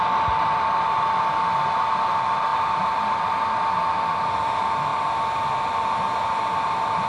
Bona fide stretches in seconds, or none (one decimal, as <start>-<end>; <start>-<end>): 0.0-2.5; 3.1-7.1